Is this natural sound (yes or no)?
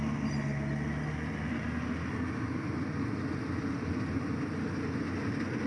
yes